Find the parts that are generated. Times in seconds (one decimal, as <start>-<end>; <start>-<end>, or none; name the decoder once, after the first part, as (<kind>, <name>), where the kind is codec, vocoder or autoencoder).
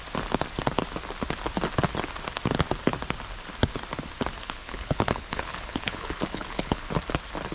4.4-6.9 (codec, HILCodec)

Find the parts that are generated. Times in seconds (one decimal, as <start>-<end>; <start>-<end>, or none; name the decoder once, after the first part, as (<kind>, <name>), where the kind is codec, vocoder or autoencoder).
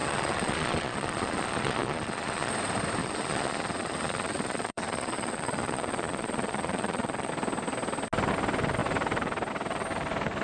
0.0-2.5 (vocoder, Vocos); 3.0-7.3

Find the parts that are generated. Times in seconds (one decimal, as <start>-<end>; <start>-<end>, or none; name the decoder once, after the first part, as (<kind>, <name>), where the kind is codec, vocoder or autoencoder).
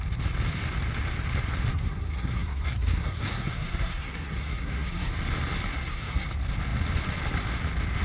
1.7-5.1 (codec, SNAC); 5.7-6.3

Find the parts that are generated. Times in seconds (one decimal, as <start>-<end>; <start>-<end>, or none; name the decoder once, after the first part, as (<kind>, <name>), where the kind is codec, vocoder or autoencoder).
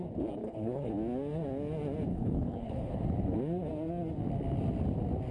0.4-0.9 (codec, HILCodec); 2.1-2.9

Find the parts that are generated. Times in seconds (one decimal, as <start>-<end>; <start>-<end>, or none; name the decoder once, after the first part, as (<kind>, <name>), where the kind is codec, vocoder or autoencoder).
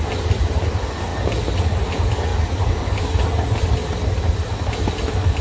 none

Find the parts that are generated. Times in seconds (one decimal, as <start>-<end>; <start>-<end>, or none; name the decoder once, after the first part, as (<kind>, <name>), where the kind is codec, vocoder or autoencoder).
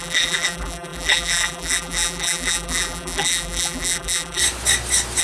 0.0-4.4 (vocoder, BigVGAN v2)